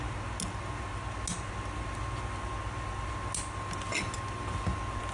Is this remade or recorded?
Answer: recorded